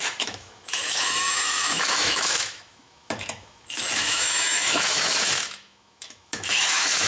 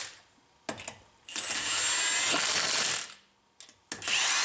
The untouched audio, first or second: second